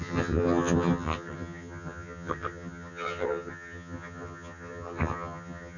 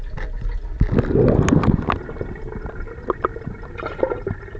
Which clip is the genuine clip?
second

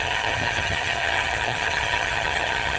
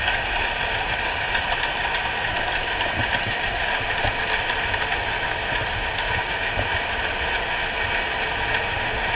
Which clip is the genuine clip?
second